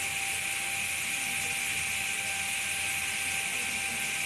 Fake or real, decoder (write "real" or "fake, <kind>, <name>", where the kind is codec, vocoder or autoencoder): real